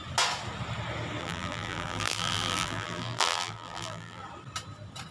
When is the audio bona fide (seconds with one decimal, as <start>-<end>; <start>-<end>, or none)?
0.0-1.2; 4.2-5.1